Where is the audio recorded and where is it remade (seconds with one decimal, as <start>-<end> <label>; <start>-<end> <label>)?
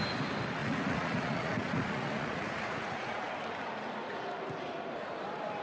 0.0-0.6 recorded; 0.6-3.3 remade; 3.3-5.6 recorded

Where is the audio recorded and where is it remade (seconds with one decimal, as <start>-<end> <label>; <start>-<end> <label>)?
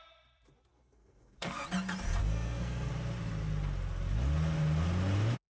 0.0-0.7 recorded; 0.7-1.6 remade; 1.6-2.2 recorded; 2.2-2.9 remade; 2.9-5.5 recorded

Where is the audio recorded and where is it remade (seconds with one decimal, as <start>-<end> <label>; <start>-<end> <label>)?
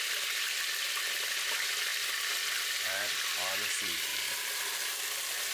0.0-4.1 recorded; 4.1-4.8 remade; 4.8-5.5 recorded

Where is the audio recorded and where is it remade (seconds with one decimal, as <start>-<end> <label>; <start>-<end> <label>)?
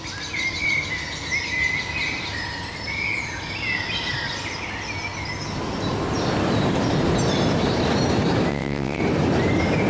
0.0-8.5 recorded; 8.5-9.0 remade; 9.0-9.9 recorded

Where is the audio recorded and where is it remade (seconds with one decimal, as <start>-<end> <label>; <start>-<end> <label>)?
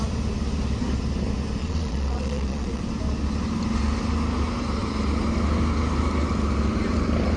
0.0-1.6 recorded; 1.6-2.8 remade; 2.8-7.4 recorded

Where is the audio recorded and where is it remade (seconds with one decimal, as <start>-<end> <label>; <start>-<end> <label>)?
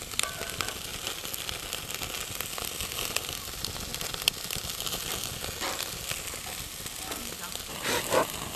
0.0-0.9 recorded; 0.9-1.6 remade; 1.6-8.6 recorded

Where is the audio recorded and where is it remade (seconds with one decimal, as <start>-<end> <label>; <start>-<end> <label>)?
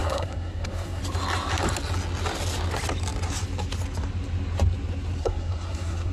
0.0-1.0 remade; 1.0-5.2 recorded; 5.2-6.1 remade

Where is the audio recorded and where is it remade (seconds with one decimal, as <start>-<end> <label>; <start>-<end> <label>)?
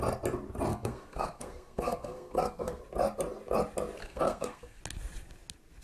0.0-0.7 recorded; 0.7-2.8 remade; 2.8-4.0 recorded; 4.0-4.8 remade; 4.8-5.8 recorded